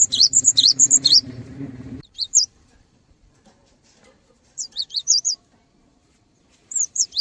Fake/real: fake